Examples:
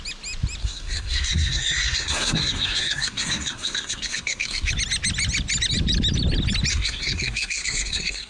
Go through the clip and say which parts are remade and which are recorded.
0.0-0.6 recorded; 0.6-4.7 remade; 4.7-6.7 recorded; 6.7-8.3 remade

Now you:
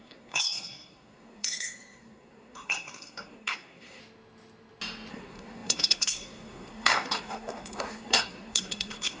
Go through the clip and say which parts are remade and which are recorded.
0.0-4.0 remade; 4.0-5.1 recorded; 5.1-9.2 remade

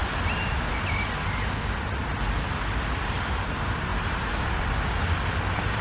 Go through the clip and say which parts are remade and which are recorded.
0.0-5.8 recorded

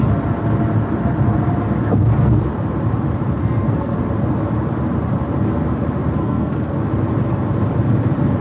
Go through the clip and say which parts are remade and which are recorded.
0.0-1.8 recorded; 1.8-2.4 remade; 2.4-3.4 recorded; 3.4-4.0 remade; 4.0-6.2 recorded; 6.2-6.8 remade; 6.8-8.4 recorded

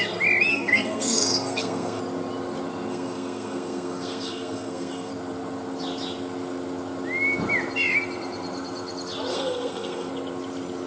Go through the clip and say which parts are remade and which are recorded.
0.0-0.5 recorded; 0.5-2.0 remade; 2.0-2.9 recorded; 2.9-5.1 remade; 5.1-9.3 recorded; 9.3-10.1 remade; 10.1-10.9 recorded